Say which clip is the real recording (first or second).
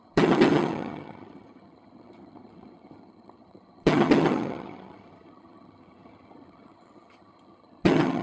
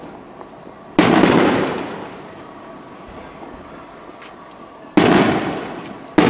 second